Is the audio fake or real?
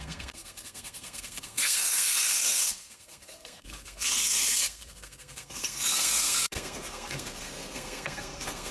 fake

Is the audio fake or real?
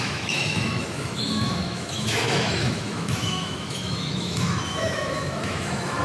fake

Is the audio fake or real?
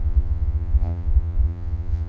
fake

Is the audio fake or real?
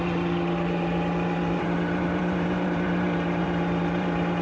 fake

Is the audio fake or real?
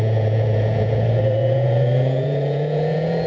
fake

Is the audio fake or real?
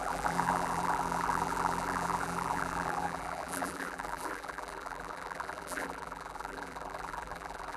fake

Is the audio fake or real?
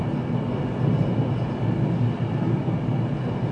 real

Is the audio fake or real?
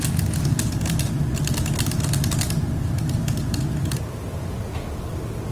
real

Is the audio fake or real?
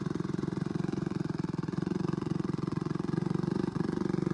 fake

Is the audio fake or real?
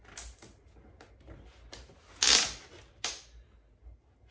real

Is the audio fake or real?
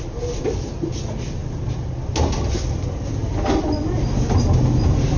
real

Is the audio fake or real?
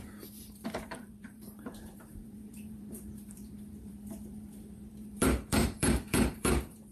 fake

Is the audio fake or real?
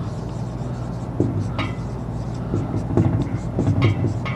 real